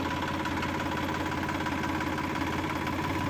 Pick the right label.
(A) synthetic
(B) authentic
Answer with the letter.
B